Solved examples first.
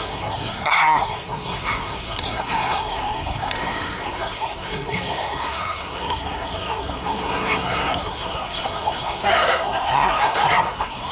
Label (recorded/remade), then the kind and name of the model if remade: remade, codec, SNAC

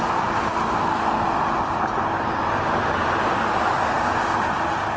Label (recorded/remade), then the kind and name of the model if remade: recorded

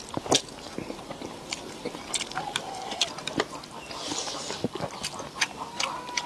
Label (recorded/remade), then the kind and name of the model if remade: recorded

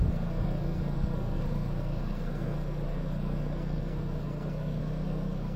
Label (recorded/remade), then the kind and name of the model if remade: remade, codec, SNAC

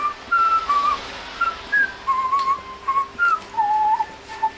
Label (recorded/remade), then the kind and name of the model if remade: recorded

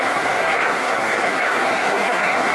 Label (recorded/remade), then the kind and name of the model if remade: remade, codec, SNAC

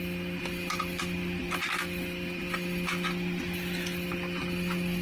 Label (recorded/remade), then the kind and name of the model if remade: recorded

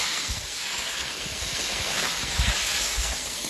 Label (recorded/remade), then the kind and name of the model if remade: remade, codec, SNAC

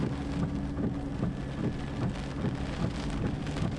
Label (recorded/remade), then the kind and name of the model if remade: recorded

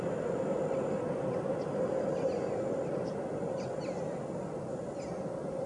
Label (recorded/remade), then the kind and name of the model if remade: recorded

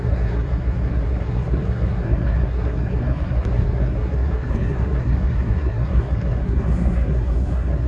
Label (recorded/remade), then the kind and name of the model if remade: remade, codec, SNAC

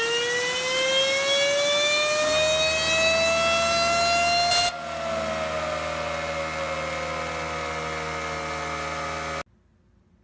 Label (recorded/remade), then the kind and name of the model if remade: recorded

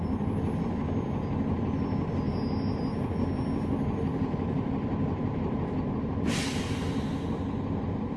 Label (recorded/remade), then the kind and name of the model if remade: recorded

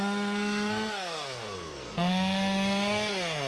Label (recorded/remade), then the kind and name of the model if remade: remade, codec, SNAC